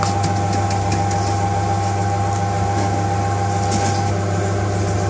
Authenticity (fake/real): real